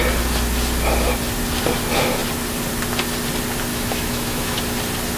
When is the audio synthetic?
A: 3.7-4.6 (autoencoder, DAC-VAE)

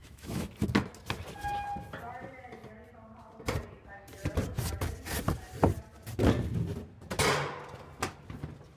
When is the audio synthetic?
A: 0.0-0.5 (autoencoder, DAC-VAE)

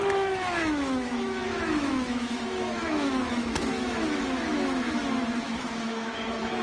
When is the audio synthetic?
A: 0.0-6.6 (autoencoder, DAC-VAE)

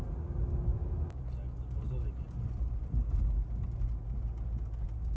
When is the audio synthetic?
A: 0.7-1.2 (autoencoder, DAC-VAE)

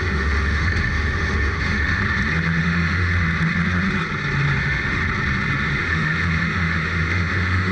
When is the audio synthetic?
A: 0.0-2.0 (autoencoder, DAC-VAE); 2.6-3.1; 4.6-5.0; 5.7-7.7

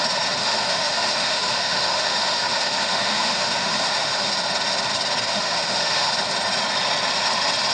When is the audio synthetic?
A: 0.4-4.3 (autoencoder, DAC-VAE); 5.3-6.1